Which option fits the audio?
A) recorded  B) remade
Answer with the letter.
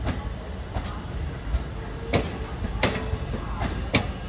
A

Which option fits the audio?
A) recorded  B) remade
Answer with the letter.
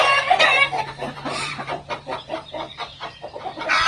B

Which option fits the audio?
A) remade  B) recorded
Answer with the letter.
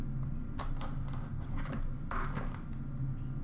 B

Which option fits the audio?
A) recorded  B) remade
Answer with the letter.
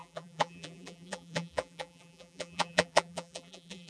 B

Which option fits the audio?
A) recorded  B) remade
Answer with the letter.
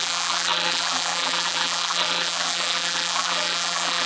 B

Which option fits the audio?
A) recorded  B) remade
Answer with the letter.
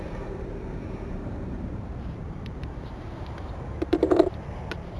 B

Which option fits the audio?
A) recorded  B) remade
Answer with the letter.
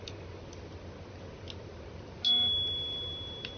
A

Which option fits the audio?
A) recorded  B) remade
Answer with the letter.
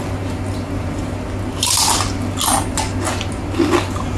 A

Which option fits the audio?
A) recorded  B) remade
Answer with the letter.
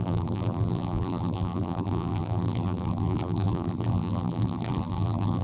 B